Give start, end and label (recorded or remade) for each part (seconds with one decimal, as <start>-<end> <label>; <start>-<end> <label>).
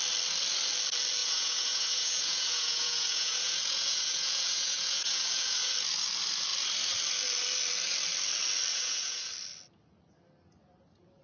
0.0-1.2 recorded; 1.2-5.7 remade; 5.7-8.7 recorded; 8.7-9.3 remade; 9.3-11.2 recorded